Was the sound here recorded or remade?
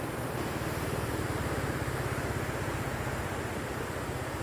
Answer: recorded